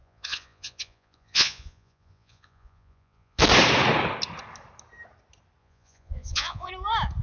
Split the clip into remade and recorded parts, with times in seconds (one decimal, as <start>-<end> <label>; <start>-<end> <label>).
0.0-3.4 remade; 3.4-5.6 recorded; 5.6-6.7 remade; 6.7-7.2 recorded